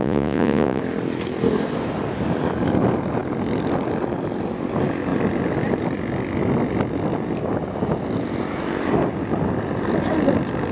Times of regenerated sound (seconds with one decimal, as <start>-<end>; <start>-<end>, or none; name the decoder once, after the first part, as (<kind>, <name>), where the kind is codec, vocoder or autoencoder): 0.0-0.8 (vocoder, Vocos)